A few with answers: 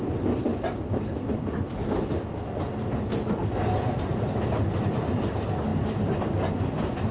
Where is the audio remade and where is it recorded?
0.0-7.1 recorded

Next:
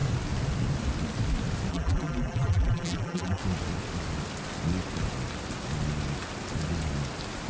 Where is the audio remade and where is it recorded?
0.0-1.7 recorded; 1.7-3.4 remade; 3.4-7.5 recorded

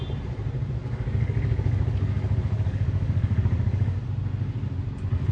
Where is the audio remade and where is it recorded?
0.0-0.8 recorded; 0.8-4.0 remade; 4.0-5.3 recorded

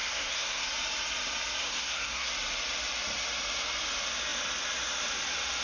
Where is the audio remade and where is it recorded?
0.0-0.7 remade; 0.7-1.6 recorded; 1.6-2.3 remade; 2.3-5.6 recorded

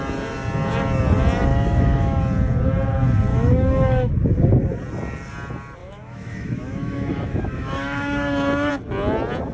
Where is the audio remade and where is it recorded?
0.0-1.5 recorded; 1.5-2.2 remade; 2.2-3.3 recorded; 3.3-4.1 remade; 4.1-5.8 recorded; 5.8-8.7 remade; 8.7-9.5 recorded